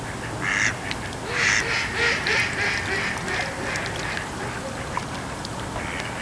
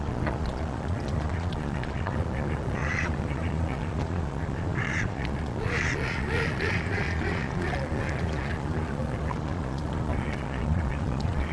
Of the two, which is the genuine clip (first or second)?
first